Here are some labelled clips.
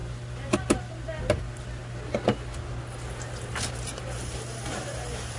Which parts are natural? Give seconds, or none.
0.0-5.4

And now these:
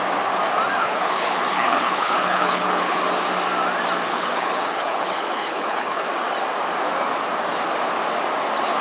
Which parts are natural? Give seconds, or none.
0.0-0.8; 3.0-4.1; 6.1-8.8

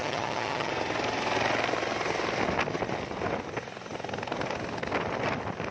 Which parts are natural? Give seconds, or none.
0.7-5.7

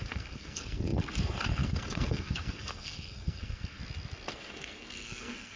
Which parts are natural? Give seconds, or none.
3.8-4.3

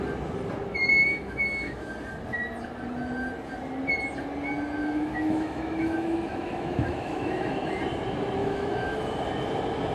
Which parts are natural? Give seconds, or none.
0.0-0.8; 1.9-4.8; 7.8-8.4; 9.2-9.9

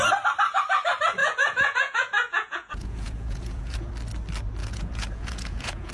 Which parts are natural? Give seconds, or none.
0.0-1.2; 3.9-4.6

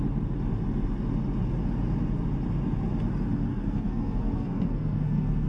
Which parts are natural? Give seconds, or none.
0.0-3.5

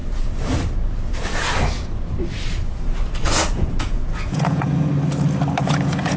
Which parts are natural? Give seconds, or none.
0.0-3.5; 4.9-5.6